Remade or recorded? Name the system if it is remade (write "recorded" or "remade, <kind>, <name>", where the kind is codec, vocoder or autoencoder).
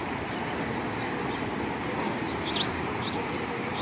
recorded